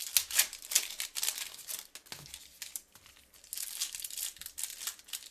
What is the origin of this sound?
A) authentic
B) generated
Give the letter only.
A